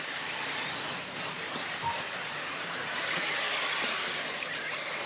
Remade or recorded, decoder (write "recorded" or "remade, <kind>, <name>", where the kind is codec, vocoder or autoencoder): recorded